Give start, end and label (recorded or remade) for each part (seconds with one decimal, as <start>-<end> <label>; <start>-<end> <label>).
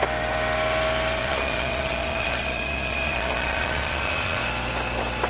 0.0-1.2 recorded; 1.2-4.4 remade; 4.4-5.3 recorded